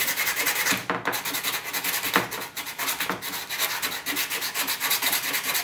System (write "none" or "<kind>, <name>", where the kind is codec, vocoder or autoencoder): none